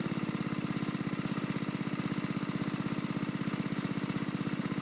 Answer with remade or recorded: recorded